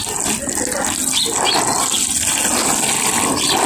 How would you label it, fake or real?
real